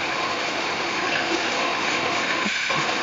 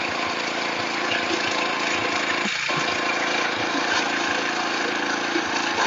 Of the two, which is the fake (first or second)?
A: first